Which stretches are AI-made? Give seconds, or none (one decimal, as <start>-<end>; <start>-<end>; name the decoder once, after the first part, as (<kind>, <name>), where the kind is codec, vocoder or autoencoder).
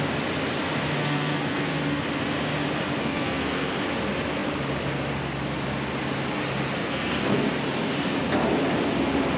1.0-2.0 (codec, SNAC); 3.0-3.7; 6.8-7.5